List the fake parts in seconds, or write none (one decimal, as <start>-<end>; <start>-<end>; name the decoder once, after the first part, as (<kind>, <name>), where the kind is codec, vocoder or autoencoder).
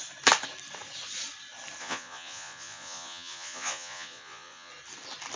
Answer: 1.8-4.7 (vocoder, Vocos)